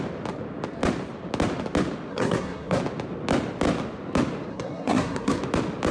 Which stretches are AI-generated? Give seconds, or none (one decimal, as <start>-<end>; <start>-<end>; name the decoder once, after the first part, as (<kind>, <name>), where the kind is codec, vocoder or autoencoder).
2.1-2.8 (codec, SNAC); 4.5-5.4